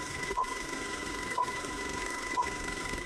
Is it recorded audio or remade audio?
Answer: remade